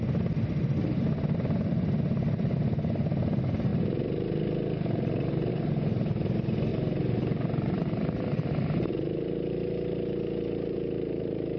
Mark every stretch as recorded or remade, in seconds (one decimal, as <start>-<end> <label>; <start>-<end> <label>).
0.0-6.7 recorded; 6.7-11.6 remade